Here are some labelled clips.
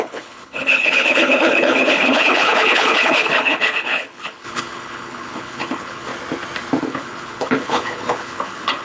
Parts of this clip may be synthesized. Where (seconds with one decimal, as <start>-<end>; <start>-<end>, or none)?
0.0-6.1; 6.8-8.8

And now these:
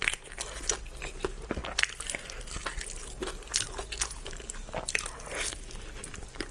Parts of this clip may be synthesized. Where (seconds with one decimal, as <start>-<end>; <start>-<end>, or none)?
none

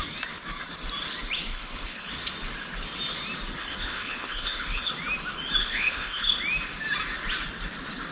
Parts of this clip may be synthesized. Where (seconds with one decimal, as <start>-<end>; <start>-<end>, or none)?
1.5-2.1; 3.6-4.9; 5.6-6.4